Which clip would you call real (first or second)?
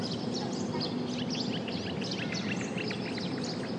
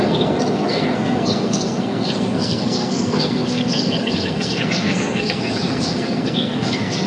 first